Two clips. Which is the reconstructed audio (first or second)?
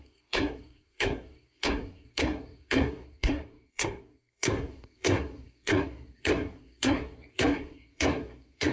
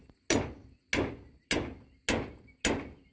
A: first